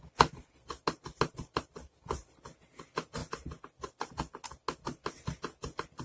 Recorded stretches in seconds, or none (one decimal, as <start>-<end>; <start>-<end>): 0.0-6.0